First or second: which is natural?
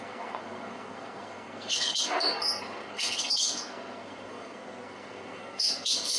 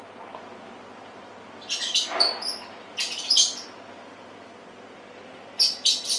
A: second